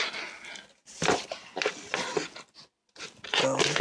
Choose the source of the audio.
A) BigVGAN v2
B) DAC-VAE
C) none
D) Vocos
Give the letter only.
C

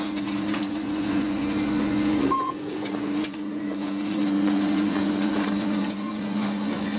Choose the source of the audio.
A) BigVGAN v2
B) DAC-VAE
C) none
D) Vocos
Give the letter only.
D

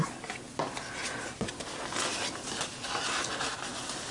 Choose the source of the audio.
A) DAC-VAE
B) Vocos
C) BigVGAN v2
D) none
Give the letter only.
D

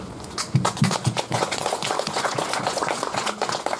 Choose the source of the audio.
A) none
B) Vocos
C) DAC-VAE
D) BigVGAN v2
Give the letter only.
B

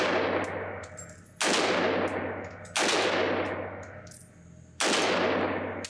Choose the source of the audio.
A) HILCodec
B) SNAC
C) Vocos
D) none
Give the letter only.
D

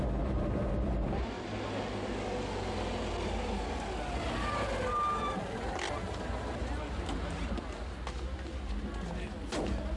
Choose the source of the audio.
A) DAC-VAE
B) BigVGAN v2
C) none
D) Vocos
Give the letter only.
C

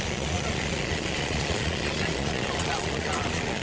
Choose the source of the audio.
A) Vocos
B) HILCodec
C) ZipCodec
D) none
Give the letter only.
A